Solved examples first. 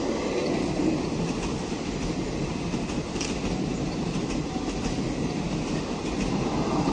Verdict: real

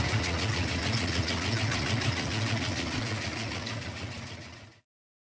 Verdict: fake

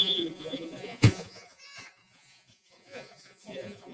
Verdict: fake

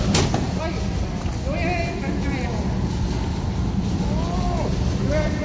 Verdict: real